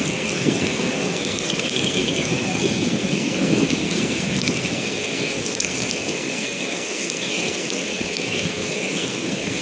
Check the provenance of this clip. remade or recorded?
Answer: remade